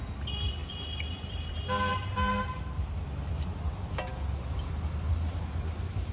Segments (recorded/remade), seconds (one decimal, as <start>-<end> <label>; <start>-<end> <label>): 0.0-6.1 recorded

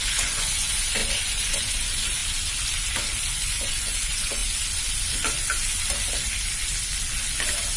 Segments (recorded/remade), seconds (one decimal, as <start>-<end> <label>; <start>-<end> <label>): 0.0-2.2 remade; 2.2-3.3 recorded; 3.3-4.4 remade; 4.4-7.8 recorded

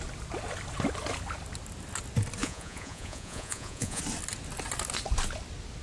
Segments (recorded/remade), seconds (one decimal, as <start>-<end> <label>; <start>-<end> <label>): 0.0-2.4 recorded; 2.4-4.0 remade; 4.0-5.8 recorded

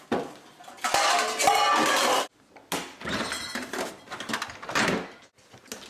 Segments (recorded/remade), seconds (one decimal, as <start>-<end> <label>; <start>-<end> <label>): 0.0-5.9 recorded

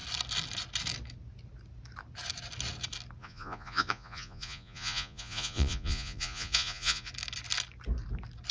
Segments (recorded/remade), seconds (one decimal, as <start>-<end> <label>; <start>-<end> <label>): 0.0-3.2 recorded; 3.2-7.1 remade; 7.1-8.5 recorded

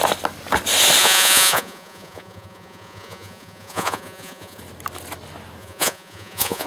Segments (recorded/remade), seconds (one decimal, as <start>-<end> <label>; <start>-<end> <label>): 0.0-1.0 recorded; 1.0-4.6 remade; 4.6-5.6 recorded; 5.6-6.7 remade